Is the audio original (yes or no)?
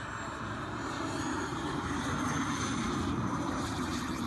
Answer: no